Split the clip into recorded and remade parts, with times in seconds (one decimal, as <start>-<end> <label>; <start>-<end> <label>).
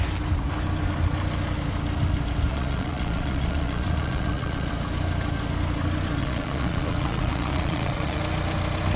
0.0-2.5 recorded; 2.5-4.7 remade; 4.7-6.2 recorded; 6.2-8.2 remade; 8.2-9.0 recorded